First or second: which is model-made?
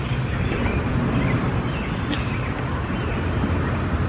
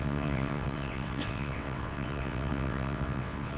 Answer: second